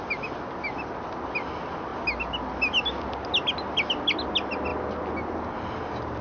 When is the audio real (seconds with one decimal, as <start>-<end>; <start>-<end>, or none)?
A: 0.0-6.2

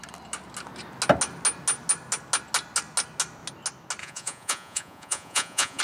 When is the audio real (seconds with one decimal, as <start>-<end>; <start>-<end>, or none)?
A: 0.0-4.0

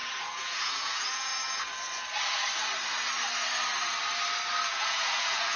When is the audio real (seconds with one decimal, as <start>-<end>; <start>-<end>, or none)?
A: 1.3-4.7

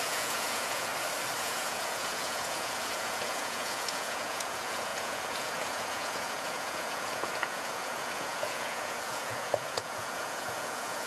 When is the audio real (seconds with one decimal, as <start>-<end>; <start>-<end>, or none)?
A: 0.9-1.4